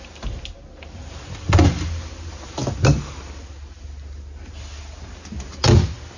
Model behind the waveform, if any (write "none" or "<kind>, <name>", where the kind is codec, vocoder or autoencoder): none